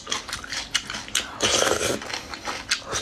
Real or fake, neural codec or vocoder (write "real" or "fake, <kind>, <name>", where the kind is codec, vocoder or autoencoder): real